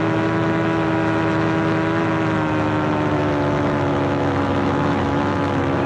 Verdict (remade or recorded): remade